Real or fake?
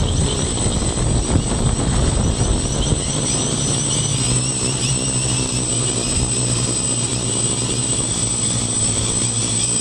real